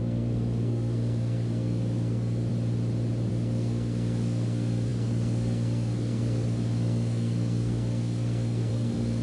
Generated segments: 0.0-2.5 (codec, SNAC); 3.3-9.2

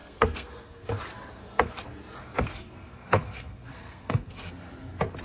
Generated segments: 0.0-0.9 (codec, SNAC); 1.3-1.8; 2.2-4.5

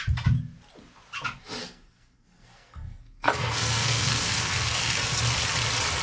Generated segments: 1.6-5.2 (codec, SNAC)

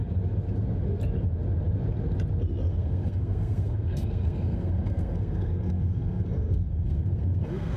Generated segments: 2.7-7.8 (codec, SNAC)

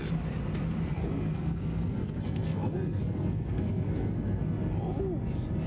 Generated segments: 1.0-4.4 (codec, SNAC)

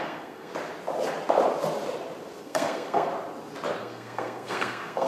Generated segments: 0.0-0.5 (codec, SNAC); 2.4-3.1; 3.8-5.1

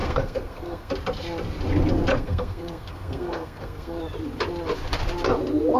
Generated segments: 0.0-0.9 (codec, SNAC); 2.1-4.0

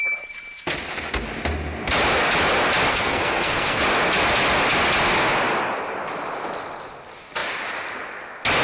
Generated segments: 2.9-3.8 (codec, SNAC)